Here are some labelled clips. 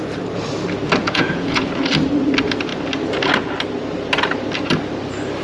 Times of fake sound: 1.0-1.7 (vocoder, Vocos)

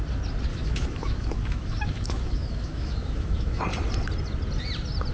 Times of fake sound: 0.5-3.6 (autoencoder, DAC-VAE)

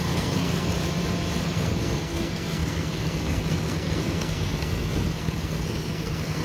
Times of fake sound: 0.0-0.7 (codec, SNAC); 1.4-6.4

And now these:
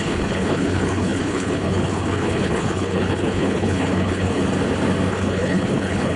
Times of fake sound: 0.0-4.4 (codec, HILCodec); 5.1-6.2

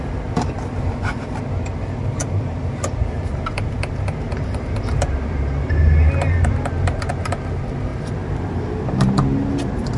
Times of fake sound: 0.0-10.0 (vocoder, BigVGAN v2)